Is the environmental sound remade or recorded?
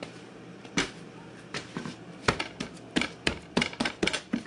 remade